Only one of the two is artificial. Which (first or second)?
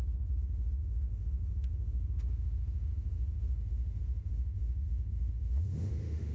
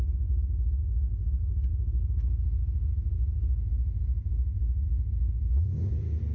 first